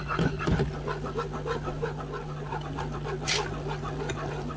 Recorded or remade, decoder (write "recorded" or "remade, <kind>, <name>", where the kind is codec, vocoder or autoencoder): recorded